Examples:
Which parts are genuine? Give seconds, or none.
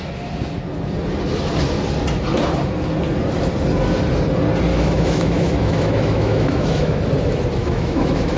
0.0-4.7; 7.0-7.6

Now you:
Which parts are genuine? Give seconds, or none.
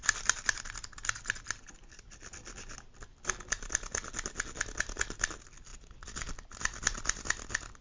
0.0-7.8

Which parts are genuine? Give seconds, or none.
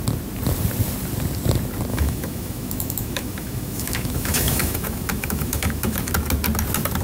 0.0-1.9; 6.1-7.0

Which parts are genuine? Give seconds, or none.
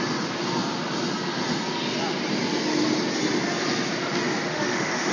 0.0-4.5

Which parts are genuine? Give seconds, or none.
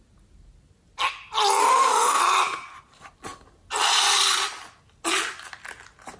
0.0-1.6; 2.2-6.2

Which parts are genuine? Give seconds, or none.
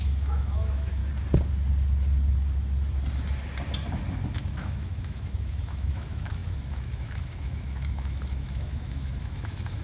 1.0-4.3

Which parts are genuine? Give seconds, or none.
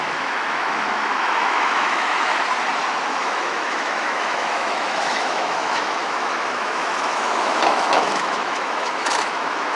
2.3-3.1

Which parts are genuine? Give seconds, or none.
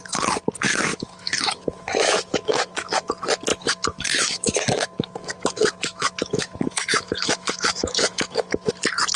0.0-0.9; 3.1-3.5; 8.7-9.2